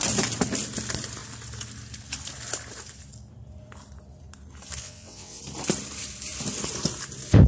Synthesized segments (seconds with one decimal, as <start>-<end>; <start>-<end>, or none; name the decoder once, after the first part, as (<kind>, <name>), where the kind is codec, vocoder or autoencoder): 4.8-5.4 (vocoder, WaveNeXt)